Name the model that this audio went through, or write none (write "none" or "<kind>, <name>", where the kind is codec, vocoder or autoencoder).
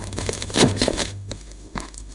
autoencoder, DAC-VAE